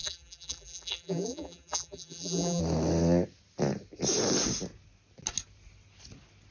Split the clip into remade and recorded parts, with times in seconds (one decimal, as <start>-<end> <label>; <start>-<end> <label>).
0.0-2.6 remade; 2.6-6.5 recorded